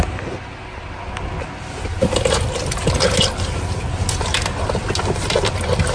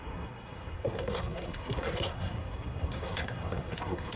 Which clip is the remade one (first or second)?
second